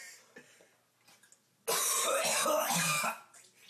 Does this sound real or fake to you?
real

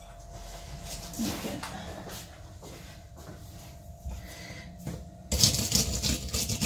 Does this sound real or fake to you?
real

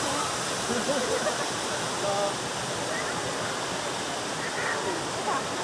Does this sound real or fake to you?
real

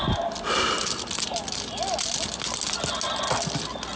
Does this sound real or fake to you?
real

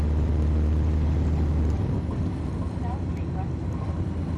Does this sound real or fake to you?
real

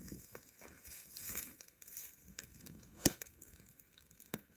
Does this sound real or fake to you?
fake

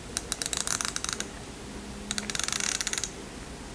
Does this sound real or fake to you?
real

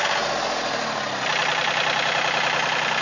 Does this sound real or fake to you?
real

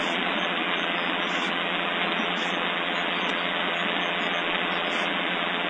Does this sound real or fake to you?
fake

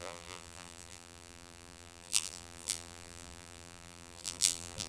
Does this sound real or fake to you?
fake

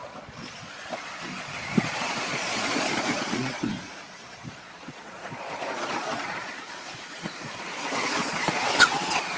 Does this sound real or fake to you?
fake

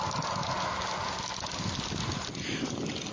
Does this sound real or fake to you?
real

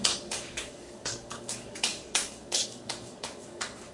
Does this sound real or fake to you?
fake